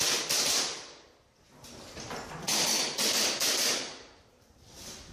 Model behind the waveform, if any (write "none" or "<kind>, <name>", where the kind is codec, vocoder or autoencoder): none